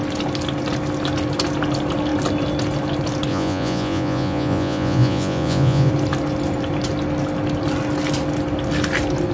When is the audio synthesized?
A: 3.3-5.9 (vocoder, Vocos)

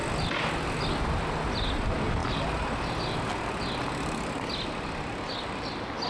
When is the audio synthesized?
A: none

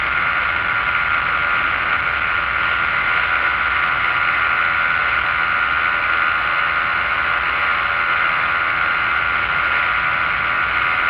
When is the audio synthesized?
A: none

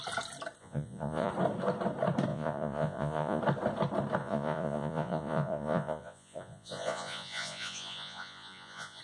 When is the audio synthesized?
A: 0.6-1.3 (vocoder, Vocos); 2.3-3.4; 4.2-9.0

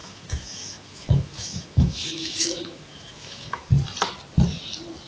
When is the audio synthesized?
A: 0.0-3.7 (autoencoder, DAC-VAE)

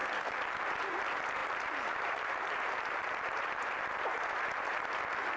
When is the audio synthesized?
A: 0.0-1.0 (vocoder, BigVGAN v2); 1.4-4.4